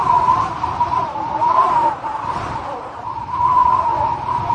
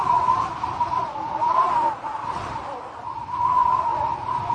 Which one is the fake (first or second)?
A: first